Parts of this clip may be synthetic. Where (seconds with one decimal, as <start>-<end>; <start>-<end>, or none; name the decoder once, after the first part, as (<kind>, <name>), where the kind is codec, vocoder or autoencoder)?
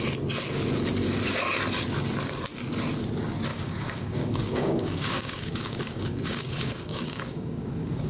3.5-8.1 (codec, DAC)